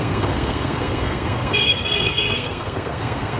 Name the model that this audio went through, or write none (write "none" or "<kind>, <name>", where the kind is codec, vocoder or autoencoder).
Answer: codec, SNAC